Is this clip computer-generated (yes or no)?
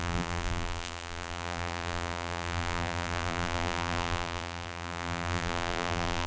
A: yes